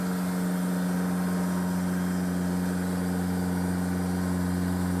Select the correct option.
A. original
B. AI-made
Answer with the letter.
A